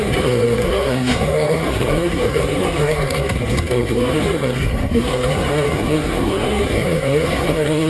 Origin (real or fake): fake